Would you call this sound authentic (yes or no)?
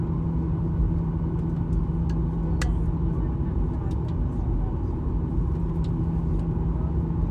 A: yes